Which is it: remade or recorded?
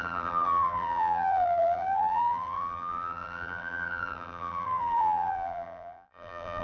remade